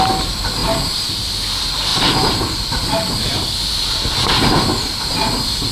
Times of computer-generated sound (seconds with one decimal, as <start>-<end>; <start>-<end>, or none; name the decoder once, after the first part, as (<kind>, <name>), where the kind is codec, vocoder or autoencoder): 0.6-1.3 (vocoder, BigVGAN v2); 1.9-5.0